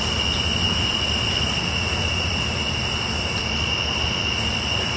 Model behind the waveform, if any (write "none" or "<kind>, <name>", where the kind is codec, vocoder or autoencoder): none